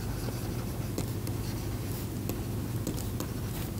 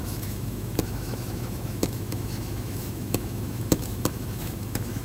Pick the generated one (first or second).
second